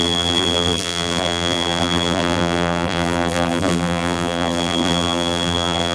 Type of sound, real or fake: fake